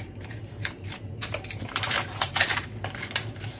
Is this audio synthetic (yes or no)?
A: yes